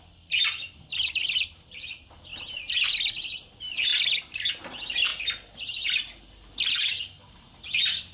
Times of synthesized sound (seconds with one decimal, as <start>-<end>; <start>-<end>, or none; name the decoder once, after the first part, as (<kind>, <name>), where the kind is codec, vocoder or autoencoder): 0.0-8.1 (vocoder, BigVGAN v2)